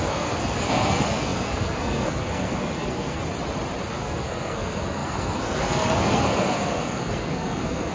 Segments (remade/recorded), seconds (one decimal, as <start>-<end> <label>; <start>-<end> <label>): 0.0-3.2 remade; 3.2-3.9 recorded; 3.9-7.9 remade